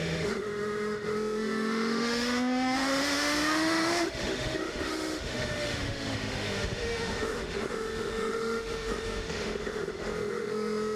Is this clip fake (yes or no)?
yes